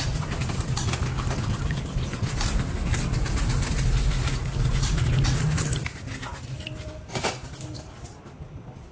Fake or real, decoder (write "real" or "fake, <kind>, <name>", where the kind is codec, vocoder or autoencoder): real